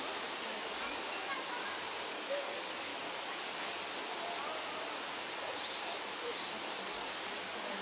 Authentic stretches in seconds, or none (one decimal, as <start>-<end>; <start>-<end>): 0.0-2.1; 2.9-6.6